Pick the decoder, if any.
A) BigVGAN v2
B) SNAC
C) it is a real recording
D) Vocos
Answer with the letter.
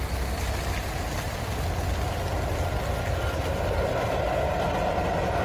C